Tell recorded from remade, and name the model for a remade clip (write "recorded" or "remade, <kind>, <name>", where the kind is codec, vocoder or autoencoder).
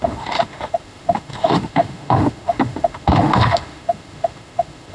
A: remade, autoencoder, DAC-VAE